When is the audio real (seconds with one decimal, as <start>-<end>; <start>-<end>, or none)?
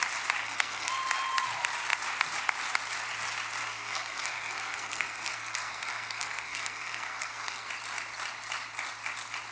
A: 0.0-0.4; 0.9-3.6; 7.7-9.5